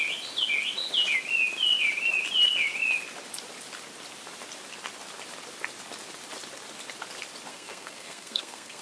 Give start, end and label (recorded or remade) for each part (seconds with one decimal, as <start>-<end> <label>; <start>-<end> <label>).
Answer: 0.0-7.5 recorded; 7.5-8.8 remade